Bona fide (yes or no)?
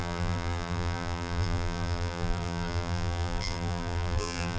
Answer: no